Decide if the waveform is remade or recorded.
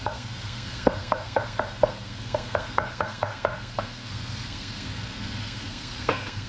remade